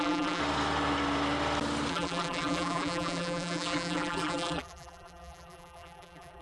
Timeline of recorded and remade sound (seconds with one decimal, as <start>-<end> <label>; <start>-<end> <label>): 0.0-0.4 remade; 0.4-1.9 recorded; 1.9-6.4 remade